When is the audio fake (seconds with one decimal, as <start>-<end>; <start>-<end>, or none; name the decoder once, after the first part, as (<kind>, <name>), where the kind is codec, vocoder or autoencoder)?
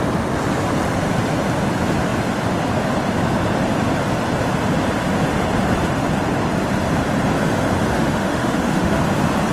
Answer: 7.9-9.0 (autoencoder, DAC-VAE)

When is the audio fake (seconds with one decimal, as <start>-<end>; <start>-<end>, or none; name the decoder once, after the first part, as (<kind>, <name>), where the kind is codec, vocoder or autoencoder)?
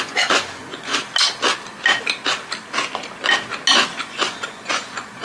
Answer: 0.0-0.9 (vocoder, Vocos); 4.0-5.2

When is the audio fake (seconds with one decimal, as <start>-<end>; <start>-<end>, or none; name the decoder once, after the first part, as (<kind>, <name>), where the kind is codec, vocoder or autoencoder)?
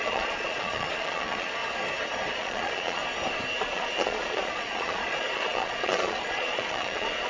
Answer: 0.0-1.6 (vocoder, Vocos); 2.3-3.0; 3.6-7.3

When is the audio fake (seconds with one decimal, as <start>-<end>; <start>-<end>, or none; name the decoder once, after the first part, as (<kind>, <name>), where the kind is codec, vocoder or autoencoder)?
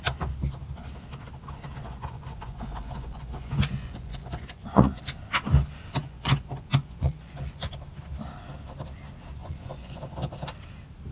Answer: 1.8-5.0 (vocoder, Vocos); 6.0-7.7; 9.4-10.0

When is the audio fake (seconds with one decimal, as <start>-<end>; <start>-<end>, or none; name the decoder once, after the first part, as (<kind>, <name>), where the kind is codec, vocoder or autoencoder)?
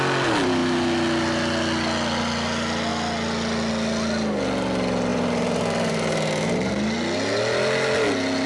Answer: 5.1-6.7 (vocoder, BigVGAN v2)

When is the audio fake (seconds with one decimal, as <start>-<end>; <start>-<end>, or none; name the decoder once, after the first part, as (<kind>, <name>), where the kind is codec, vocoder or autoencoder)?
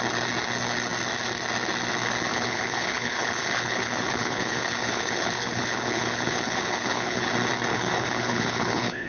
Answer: 2.3-7.3 (codec, HILCodec); 7.7-9.1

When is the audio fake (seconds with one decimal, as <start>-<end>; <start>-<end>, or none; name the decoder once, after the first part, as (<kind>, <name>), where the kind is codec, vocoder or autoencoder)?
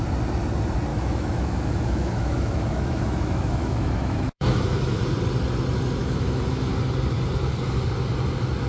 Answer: 0.9-5.0 (autoencoder, DAC-VAE); 6.0-6.7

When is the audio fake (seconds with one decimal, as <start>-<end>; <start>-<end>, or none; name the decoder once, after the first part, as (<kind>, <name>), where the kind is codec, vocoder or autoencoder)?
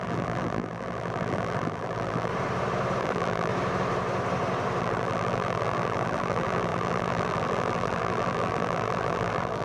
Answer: 0.0-2.3 (vocoder, BigVGAN v2); 3.0-3.5; 4.8-9.6